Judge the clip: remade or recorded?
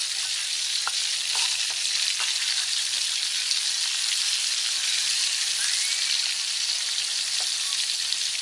recorded